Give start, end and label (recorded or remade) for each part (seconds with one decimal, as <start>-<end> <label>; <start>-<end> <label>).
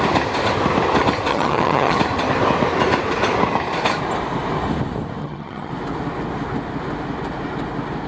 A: 0.0-1.3 recorded; 1.3-2.0 remade; 2.0-5.2 recorded; 5.2-5.7 remade; 5.7-8.1 recorded